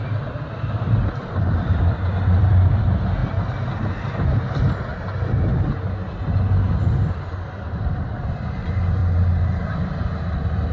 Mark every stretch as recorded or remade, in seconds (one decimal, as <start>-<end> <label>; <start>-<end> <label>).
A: 0.0-3.2 remade; 3.2-4.1 recorded; 4.1-4.9 remade; 4.9-6.9 recorded; 6.9-9.0 remade; 9.0-9.7 recorded; 9.7-10.7 remade